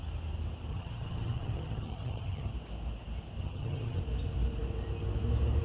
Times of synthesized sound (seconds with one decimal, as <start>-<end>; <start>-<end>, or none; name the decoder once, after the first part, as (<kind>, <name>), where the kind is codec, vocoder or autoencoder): 0.7-2.5 (vocoder, HiFi-GAN); 3.4-4.0

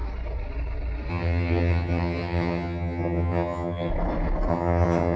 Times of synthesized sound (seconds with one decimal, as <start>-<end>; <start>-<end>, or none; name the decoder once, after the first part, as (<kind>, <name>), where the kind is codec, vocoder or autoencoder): 1.1-3.9 (vocoder, HiFi-GAN); 4.5-5.2